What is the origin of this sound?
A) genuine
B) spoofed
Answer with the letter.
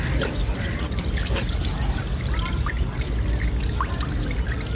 A